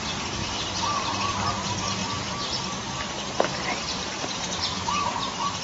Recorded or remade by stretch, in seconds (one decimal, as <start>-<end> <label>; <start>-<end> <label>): 0.0-0.4 remade; 0.4-1.5 recorded; 1.5-2.0 remade; 2.0-3.8 recorded; 3.8-5.6 remade